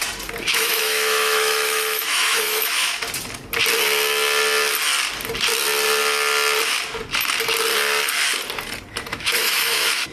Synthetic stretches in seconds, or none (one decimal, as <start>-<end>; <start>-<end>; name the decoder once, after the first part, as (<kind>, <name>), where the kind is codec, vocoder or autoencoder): 0.5-3.0 (autoencoder, DAC-VAE); 9.1-10.1